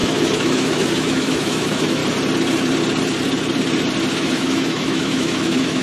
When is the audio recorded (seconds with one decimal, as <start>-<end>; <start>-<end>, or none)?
2.0-4.1